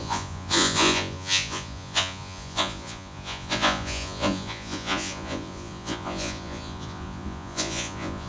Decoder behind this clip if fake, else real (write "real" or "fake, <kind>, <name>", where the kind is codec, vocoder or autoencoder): fake, vocoder, Vocos